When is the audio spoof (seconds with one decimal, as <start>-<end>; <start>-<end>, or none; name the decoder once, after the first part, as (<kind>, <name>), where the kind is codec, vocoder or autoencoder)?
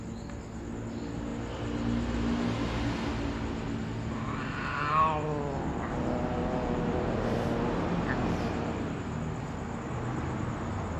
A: none